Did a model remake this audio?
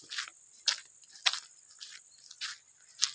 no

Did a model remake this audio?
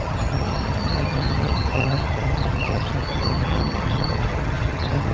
yes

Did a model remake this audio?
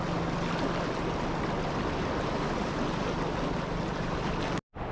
no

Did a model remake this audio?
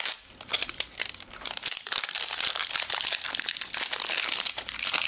no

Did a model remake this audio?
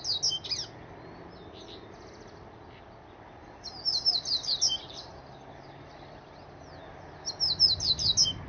no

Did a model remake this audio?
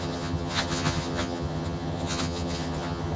yes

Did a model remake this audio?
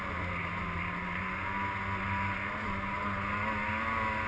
no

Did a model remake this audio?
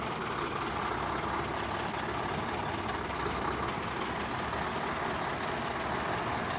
no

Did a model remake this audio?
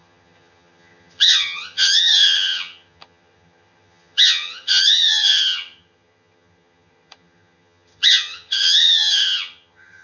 yes